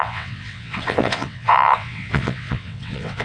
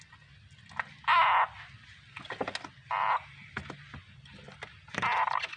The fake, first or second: first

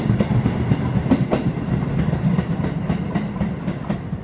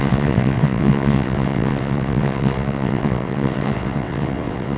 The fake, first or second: second